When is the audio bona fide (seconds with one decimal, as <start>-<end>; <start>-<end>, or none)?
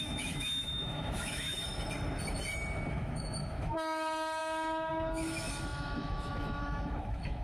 1.6-2.9